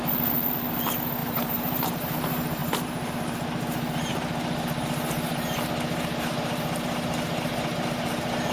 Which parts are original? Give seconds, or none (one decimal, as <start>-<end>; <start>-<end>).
0.0-1.2; 1.9-2.6; 3.1-8.5